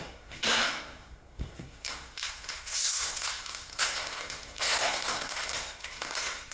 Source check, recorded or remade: remade